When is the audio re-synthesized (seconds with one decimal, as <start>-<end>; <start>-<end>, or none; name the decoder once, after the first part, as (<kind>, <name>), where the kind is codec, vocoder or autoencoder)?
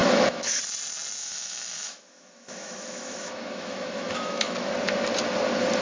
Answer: 0.0-0.6 (autoencoder, DAC-VAE); 1.2-4.7